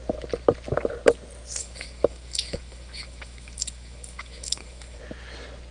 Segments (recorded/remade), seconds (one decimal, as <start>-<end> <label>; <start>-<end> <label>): 0.0-1.6 recorded; 1.6-5.0 remade; 5.0-5.7 recorded